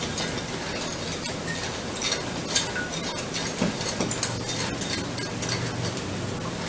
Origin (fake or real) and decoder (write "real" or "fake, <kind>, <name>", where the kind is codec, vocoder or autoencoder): real